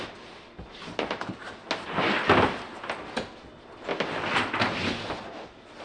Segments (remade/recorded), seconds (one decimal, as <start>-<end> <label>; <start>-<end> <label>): 0.0-5.8 recorded